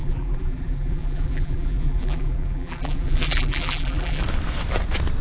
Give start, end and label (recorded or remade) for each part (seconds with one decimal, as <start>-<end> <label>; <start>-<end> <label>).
0.0-4.2 remade; 4.2-5.2 recorded